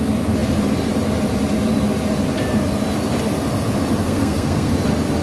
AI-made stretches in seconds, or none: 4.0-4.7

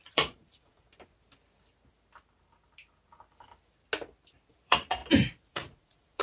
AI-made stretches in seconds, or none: 0.0-0.9; 4.5-5.0; 5.5-6.2

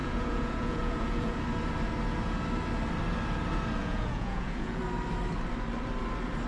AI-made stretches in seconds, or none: 0.0-1.4; 3.8-4.8

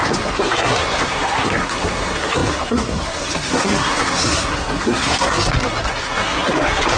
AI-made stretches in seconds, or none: 0.0-7.0